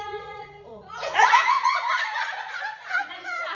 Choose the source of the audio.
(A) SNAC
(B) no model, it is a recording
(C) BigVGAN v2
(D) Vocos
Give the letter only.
D